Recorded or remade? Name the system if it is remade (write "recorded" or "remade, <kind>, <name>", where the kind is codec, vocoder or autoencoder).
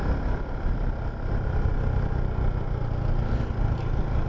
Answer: recorded